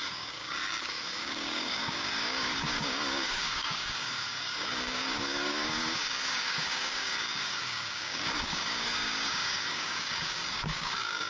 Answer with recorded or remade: remade